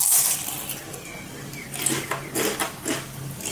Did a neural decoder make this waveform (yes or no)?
no